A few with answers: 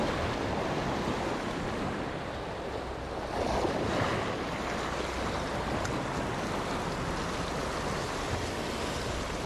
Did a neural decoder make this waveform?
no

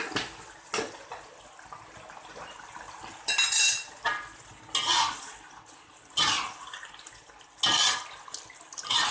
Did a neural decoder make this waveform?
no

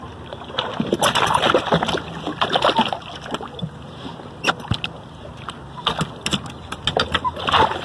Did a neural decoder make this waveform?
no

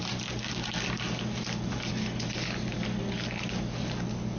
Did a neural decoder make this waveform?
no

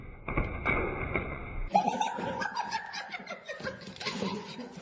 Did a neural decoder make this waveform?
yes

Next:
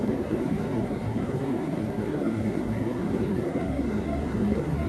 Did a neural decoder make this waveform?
yes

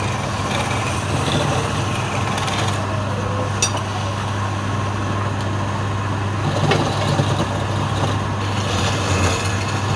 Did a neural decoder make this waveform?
no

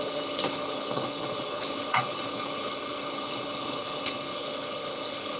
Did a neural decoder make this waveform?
yes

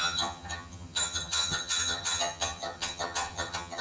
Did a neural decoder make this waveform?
yes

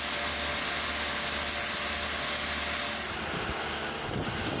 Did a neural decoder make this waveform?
no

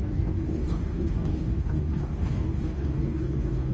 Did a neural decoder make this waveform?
yes